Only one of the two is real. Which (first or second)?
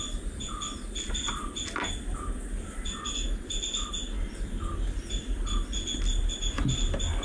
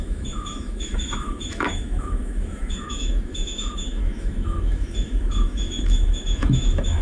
first